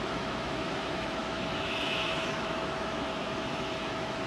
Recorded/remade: remade